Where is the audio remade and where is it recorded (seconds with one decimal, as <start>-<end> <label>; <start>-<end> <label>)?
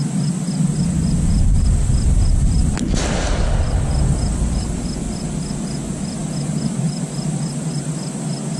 0.0-8.6 recorded